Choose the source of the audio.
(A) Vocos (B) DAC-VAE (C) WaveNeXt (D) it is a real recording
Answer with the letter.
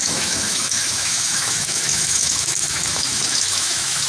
B